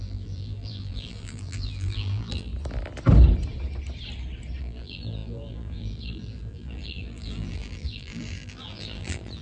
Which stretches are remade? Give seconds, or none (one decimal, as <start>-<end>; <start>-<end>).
0.0-2.5; 4.6-9.4